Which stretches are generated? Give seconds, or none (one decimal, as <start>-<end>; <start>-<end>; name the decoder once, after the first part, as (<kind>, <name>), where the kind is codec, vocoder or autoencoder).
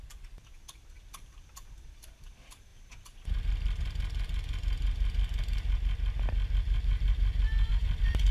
0.0-2.7 (vocoder, BigVGAN v2); 7.7-8.3